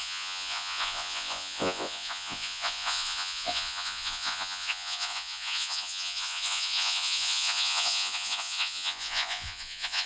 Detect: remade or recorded remade